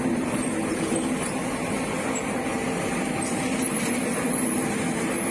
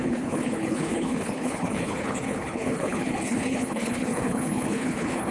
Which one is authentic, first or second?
first